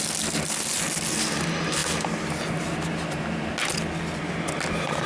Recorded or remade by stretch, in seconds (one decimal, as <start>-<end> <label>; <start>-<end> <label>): 0.0-5.1 recorded